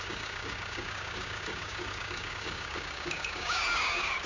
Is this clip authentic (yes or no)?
no